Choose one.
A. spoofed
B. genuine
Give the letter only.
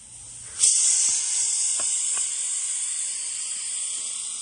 B